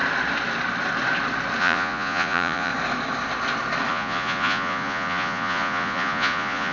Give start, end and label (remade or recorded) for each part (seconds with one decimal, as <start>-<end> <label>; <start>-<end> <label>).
0.0-1.6 recorded; 1.6-2.7 remade; 2.7-3.9 recorded; 3.9-6.7 remade